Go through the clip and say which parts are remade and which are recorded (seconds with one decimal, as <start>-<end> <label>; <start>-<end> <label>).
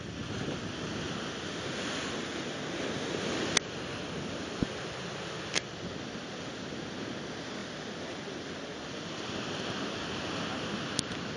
0.0-7.6 recorded; 7.6-10.2 remade; 10.2-11.4 recorded